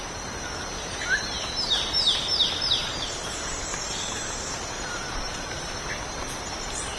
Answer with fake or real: fake